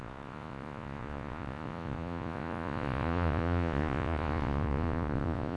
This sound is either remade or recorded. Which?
remade